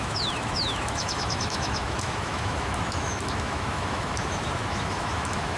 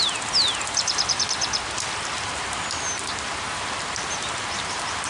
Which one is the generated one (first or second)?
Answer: first